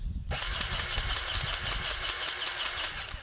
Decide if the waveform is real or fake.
real